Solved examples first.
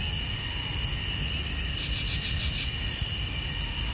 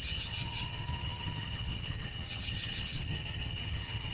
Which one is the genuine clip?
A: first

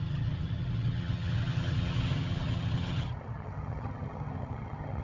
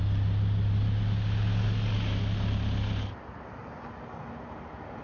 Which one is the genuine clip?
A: second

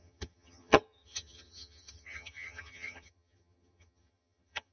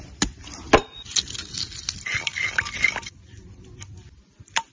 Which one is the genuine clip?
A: second